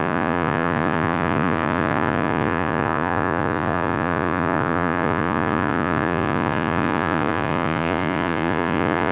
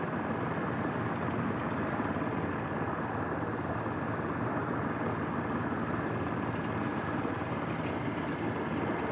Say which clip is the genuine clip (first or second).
second